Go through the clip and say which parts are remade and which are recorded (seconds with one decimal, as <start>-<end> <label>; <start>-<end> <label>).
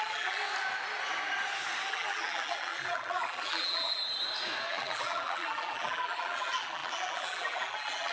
0.0-0.4 remade; 0.4-1.9 recorded; 1.9-4.0 remade; 4.0-4.7 recorded; 4.7-8.1 remade